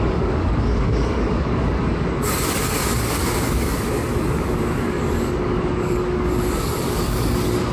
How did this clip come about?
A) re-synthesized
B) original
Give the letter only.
A